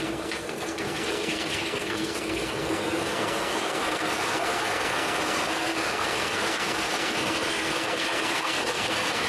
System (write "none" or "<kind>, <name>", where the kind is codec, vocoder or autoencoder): codec, SNAC